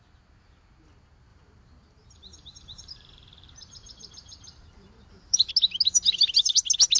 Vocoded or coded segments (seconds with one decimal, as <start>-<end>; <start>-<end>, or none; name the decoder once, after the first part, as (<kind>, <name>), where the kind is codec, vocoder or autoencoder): 1.3-5.5 (vocoder, BigVGAN v2)